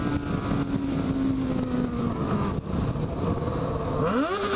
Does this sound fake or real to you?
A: real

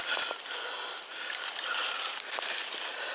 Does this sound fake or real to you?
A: real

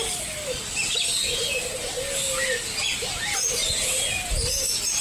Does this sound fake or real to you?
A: real